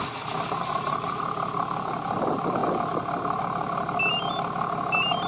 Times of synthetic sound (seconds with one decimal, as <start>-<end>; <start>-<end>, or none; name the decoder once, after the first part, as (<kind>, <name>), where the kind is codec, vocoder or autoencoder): 0.6-1.2 (vocoder, Vocos)